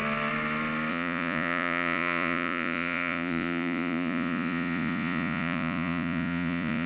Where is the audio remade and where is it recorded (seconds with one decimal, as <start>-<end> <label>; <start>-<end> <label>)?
0.0-0.9 recorded; 0.9-6.9 remade